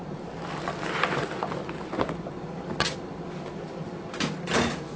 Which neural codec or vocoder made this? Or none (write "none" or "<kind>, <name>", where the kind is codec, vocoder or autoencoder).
none